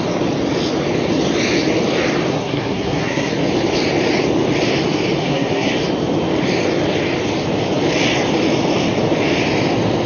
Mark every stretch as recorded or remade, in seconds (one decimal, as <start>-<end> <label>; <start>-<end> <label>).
0.0-2.3 recorded; 2.3-3.3 remade; 3.3-5.2 recorded; 5.2-5.7 remade; 5.7-10.1 recorded